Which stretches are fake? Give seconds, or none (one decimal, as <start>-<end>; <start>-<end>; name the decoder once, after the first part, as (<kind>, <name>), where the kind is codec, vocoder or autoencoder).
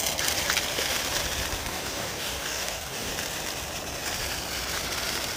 1.6-3.1 (codec, DAC)